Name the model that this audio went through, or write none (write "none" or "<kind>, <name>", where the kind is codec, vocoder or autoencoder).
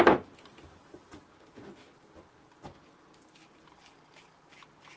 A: none